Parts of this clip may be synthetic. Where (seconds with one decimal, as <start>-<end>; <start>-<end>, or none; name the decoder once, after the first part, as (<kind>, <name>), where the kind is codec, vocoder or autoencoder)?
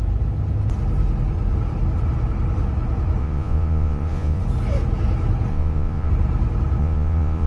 3.2-4.4 (vocoder, Vocos); 5.5-6.1; 6.8-7.5